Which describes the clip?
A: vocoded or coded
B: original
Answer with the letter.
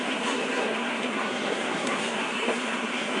A